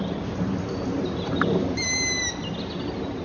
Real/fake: real